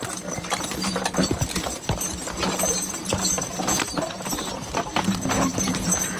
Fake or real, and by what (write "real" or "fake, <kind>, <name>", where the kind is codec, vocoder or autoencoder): fake, vocoder, BigVGAN v2